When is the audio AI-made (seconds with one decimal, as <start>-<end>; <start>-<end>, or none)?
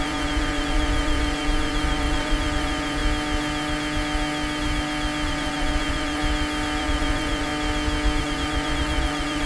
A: 0.0-3.0; 5.3-6.2; 6.8-7.5; 8.2-9.5